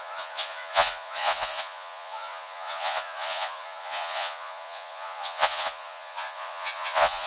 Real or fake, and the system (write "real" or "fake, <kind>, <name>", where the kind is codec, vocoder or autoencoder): fake, vocoder, Vocos